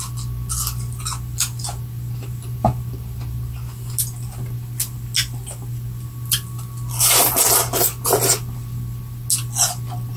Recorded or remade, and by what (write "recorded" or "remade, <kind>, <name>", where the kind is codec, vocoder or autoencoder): recorded